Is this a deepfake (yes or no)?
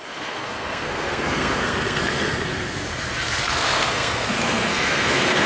yes